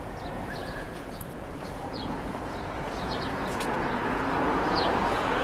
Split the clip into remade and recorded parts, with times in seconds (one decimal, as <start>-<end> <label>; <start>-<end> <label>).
0.0-5.4 remade